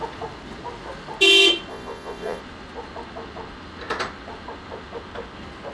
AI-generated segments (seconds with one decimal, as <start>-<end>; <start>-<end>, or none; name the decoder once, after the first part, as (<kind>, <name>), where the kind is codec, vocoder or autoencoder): 1.7-2.4 (vocoder, Vocos)